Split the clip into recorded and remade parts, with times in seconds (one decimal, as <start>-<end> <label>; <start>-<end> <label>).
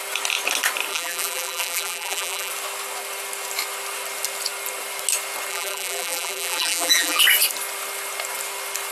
0.0-0.9 recorded; 0.9-2.5 remade; 2.5-5.5 recorded; 5.5-7.2 remade; 7.2-8.9 recorded